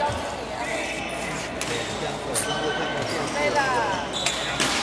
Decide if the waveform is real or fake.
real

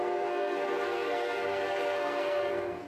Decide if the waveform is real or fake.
fake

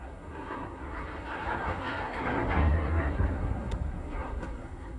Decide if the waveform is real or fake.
fake